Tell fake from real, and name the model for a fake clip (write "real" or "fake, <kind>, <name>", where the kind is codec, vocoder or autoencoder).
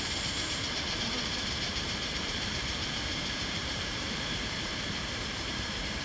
fake, vocoder, BigVGAN v2